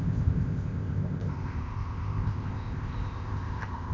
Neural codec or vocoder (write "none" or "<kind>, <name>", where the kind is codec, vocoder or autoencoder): codec, ZipCodec